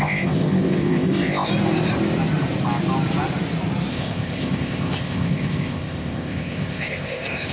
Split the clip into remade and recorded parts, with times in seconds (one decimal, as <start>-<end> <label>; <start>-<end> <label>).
0.0-1.5 remade; 1.5-3.9 recorded; 3.9-7.5 remade